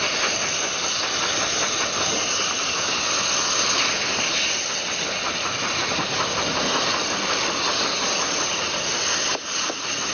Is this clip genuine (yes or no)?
yes